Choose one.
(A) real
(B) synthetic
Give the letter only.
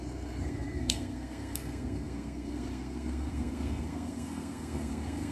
B